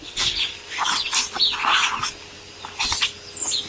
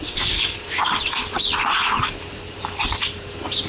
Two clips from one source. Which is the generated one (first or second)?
second